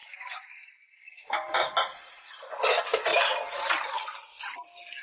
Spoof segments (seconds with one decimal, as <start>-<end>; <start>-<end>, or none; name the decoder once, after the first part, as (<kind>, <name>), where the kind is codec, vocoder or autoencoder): 0.0-0.6 (vocoder, BigVGAN v2)